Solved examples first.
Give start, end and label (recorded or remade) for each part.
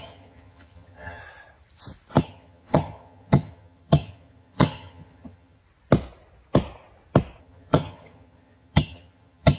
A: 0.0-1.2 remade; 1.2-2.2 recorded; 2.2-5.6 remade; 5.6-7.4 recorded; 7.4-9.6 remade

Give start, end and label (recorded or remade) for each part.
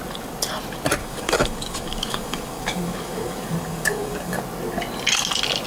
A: 0.0-1.0 recorded; 1.0-4.4 remade; 4.4-5.7 recorded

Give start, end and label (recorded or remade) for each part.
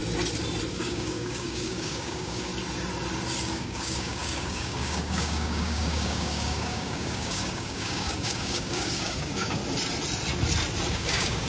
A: 0.0-0.7 recorded; 0.7-2.5 remade; 2.5-3.4 recorded; 3.4-9.6 remade; 9.6-10.9 recorded; 10.9-11.5 remade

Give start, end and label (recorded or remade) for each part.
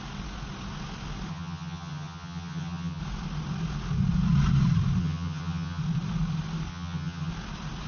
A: 0.0-1.3 recorded; 1.3-3.0 remade; 3.0-5.0 recorded; 5.0-5.8 remade; 5.8-6.7 recorded; 6.7-7.3 remade; 7.3-7.9 recorded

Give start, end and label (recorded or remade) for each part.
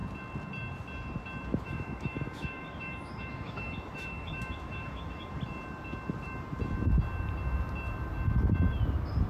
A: 0.0-1.5 recorded; 1.5-5.3 remade; 5.3-9.3 recorded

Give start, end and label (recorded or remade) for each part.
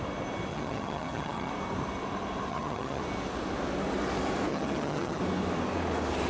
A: 0.0-0.5 recorded; 0.5-1.5 remade; 1.5-2.5 recorded; 2.5-3.0 remade; 3.0-4.5 recorded; 4.5-5.2 remade; 5.2-6.3 recorded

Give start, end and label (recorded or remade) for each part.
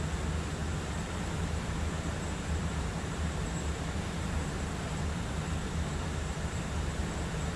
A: 0.0-0.6 recorded; 0.6-1.7 remade; 1.7-2.7 recorded; 2.7-7.6 remade